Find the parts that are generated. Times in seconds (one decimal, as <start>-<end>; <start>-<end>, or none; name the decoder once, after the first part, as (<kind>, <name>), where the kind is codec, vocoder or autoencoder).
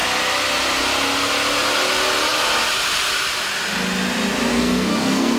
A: 4.5-5.4 (codec, SNAC)